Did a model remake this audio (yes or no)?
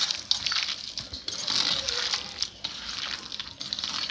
no